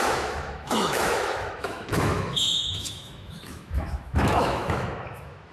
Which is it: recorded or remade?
remade